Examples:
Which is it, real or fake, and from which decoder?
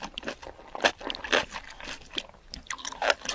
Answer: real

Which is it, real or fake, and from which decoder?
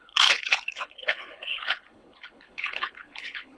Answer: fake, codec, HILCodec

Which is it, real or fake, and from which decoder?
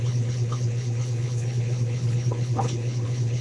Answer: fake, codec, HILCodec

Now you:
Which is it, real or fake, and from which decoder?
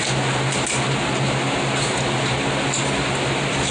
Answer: real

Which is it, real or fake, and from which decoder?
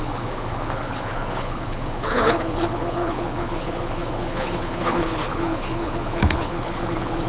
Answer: fake, codec, HILCodec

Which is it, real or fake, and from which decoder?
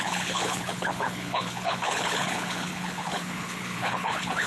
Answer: fake, codec, HILCodec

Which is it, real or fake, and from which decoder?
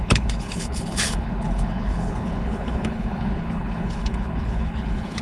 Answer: fake, codec, HILCodec